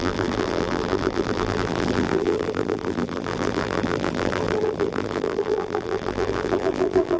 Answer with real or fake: fake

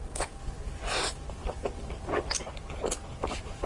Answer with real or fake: real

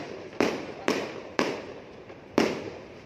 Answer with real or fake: fake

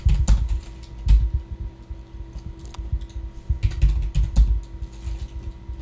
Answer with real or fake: real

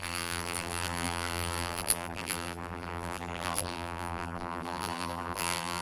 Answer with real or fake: fake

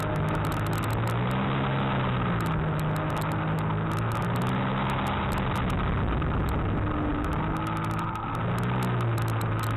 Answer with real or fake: real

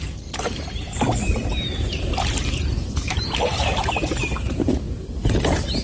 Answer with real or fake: fake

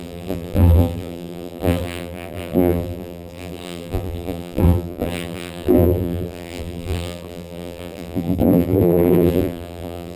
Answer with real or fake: fake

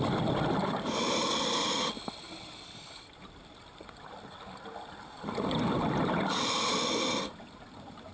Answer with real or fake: fake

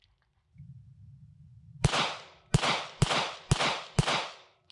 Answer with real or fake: real